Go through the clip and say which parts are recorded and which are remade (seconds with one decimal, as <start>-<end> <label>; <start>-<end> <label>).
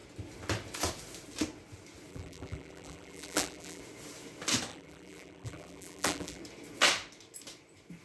0.0-2.1 recorded; 2.1-3.8 remade; 3.8-4.7 recorded; 4.7-6.4 remade; 6.4-8.0 recorded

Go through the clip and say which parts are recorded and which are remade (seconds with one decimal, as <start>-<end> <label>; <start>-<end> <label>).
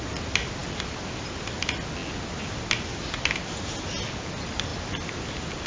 0.0-5.7 recorded